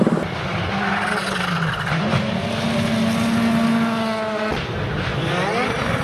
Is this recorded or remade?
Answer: recorded